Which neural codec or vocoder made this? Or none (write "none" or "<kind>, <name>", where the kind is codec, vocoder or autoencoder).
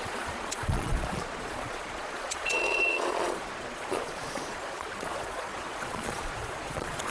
vocoder, Vocos